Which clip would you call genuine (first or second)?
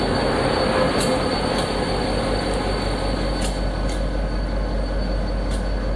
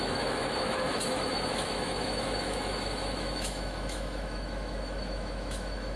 first